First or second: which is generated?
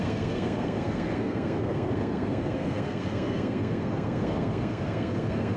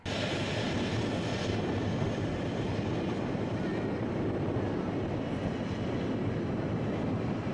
first